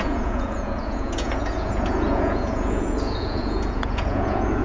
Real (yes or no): no